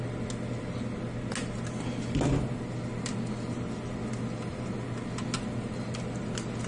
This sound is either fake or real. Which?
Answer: real